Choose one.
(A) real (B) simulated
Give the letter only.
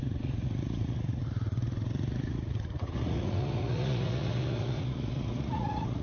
B